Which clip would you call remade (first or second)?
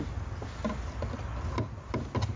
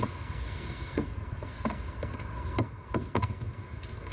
second